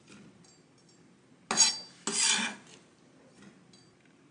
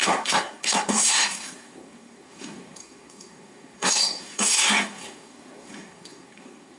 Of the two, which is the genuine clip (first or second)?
first